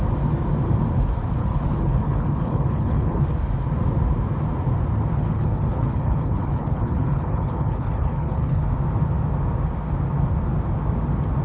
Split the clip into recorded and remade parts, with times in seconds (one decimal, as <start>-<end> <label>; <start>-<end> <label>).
0.0-1.4 recorded; 1.4-3.2 remade; 3.2-5.1 recorded; 5.1-8.6 remade; 8.6-11.4 recorded